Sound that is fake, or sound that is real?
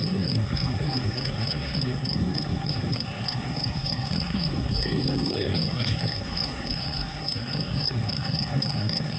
fake